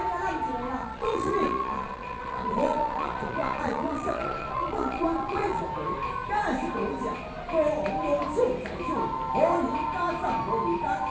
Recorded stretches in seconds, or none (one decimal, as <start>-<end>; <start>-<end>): 0.0-0.8; 5.6-11.1